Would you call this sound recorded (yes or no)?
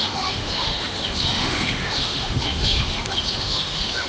no